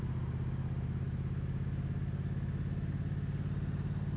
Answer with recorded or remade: recorded